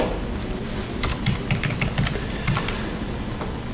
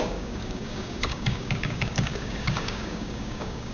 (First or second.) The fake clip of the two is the second